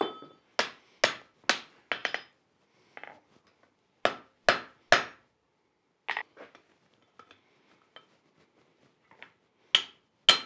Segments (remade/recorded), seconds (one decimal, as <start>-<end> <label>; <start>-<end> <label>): 0.0-2.0 recorded; 2.0-3.1 remade; 3.1-10.5 recorded